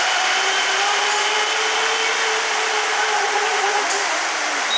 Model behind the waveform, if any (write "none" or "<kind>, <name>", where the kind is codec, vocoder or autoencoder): vocoder, BigVGAN v2